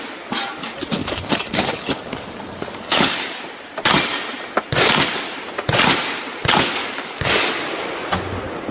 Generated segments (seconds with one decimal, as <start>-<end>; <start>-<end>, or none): 1.0-3.4; 6.8-7.5